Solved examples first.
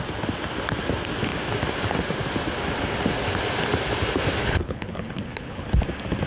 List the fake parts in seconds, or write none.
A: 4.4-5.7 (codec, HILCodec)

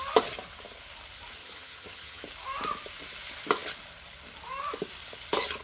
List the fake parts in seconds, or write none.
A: 1.4-2.2 (vocoder, HiFi-GAN)

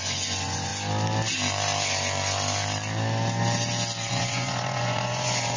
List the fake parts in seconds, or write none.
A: 0.0-0.7 (vocoder, Vocos); 4.1-5.6

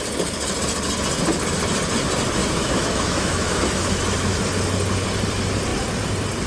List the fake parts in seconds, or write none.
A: 2.4-4.4 (autoencoder, DAC-VAE)

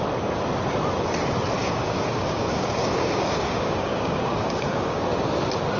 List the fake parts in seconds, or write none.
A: 1.6-5.1 (codec, DAC)

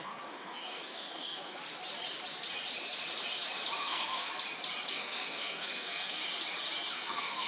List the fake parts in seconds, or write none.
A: 0.0-1.6 (codec, SNAC); 3.8-4.3; 4.9-6.2; 6.9-7.5

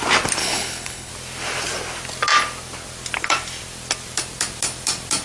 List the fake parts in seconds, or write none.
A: 0.4-1.1 (codec, HILCodec)

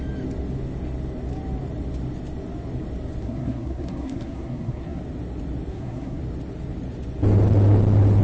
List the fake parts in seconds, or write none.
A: 3.2-5.0 (codec, SNAC); 5.7-6.2